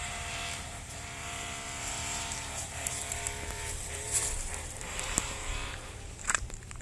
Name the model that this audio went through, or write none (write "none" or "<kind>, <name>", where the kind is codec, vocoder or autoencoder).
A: vocoder, BigVGAN v2